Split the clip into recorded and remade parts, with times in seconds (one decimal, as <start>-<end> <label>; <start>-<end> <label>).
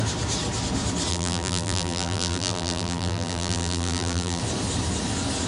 0.0-1.1 recorded; 1.1-4.4 remade; 4.4-5.5 recorded